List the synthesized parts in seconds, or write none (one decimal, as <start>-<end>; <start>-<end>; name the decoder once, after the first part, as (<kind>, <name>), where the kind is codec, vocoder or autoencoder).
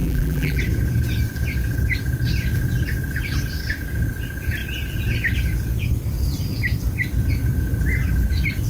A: 0.0-0.6 (vocoder, BigVGAN v2)